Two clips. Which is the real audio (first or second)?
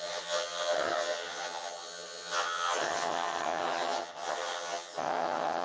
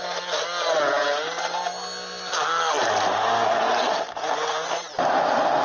second